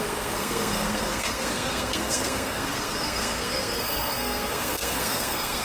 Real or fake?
fake